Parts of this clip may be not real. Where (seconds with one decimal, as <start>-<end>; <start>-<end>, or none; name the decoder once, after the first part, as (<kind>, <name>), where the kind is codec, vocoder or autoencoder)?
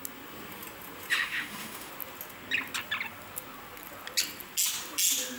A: 1.1-1.9 (autoencoder, DAC-VAE)